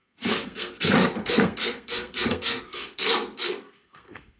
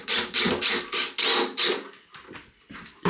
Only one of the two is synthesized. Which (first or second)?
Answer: first